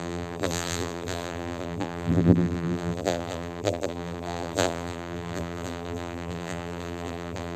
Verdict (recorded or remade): remade